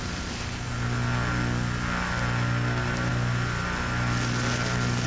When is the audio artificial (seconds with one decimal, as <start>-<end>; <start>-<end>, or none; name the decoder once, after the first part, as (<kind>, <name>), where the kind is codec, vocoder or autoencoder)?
none